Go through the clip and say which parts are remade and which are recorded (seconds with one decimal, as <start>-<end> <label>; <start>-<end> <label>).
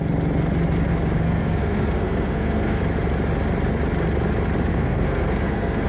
0.0-1.2 recorded; 1.2-2.8 remade; 2.8-4.7 recorded; 4.7-5.9 remade